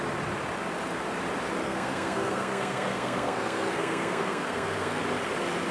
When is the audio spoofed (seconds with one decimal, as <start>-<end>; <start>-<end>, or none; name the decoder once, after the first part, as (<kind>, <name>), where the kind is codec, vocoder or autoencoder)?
1.6-5.0 (codec, SNAC)